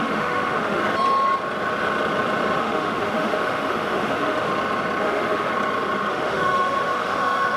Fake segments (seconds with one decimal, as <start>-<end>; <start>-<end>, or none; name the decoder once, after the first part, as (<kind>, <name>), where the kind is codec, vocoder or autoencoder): 0.0-0.8 (autoencoder, DAC-VAE); 2.6-4.5; 5.0-5.5; 6.1-7.6